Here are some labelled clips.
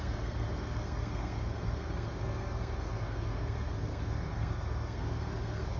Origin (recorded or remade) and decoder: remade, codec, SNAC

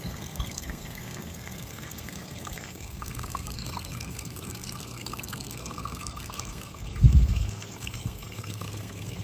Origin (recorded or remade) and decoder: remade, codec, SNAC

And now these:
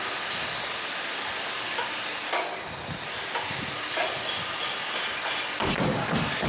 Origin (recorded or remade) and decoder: recorded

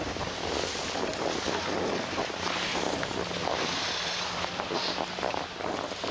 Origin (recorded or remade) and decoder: recorded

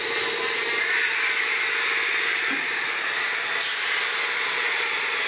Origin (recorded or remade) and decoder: recorded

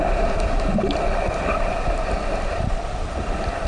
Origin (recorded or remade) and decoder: recorded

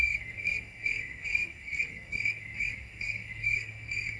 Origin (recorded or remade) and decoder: remade, codec, SNAC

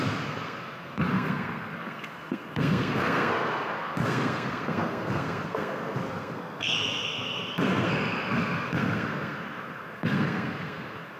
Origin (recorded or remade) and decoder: remade, codec, SNAC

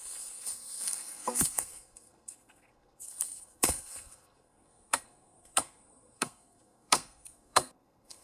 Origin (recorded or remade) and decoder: remade, codec, SNAC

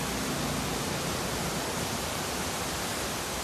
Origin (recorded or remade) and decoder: recorded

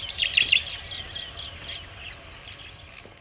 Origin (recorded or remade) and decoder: recorded